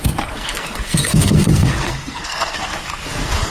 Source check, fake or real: fake